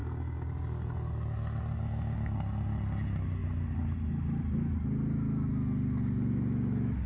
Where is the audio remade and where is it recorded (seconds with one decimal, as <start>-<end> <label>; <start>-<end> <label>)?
0.0-7.1 recorded